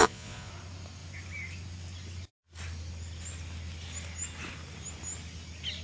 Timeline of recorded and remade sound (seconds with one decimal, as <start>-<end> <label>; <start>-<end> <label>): 0.0-0.5 remade; 0.5-5.8 recorded